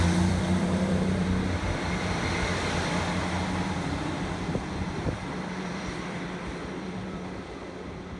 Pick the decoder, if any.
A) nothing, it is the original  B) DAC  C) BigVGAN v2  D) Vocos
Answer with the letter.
C